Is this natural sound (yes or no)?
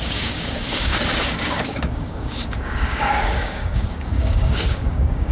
no